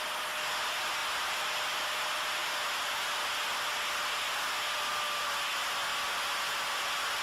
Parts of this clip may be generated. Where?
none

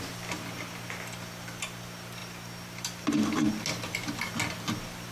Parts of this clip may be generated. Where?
none

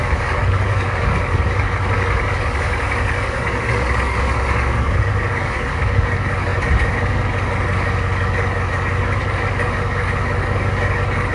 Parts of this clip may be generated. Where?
0.0-11.3 (codec, DAC)